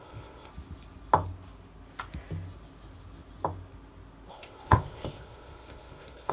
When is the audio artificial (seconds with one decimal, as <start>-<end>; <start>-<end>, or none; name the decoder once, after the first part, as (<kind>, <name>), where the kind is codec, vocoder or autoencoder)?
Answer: 0.0-0.5 (codec, ZipCodec); 4.3-6.3